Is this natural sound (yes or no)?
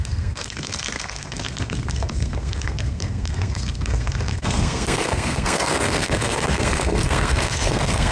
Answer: no